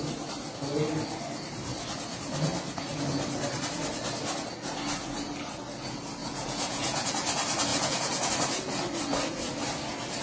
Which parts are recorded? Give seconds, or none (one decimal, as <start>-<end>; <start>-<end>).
0.0-6.2; 7.1-7.7; 8.3-10.2